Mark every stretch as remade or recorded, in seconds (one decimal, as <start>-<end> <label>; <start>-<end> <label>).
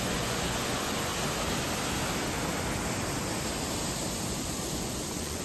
0.0-1.1 remade; 1.1-4.3 recorded; 4.3-5.4 remade